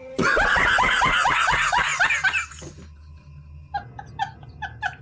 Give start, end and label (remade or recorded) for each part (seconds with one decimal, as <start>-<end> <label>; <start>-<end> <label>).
0.0-1.9 remade; 1.9-5.0 recorded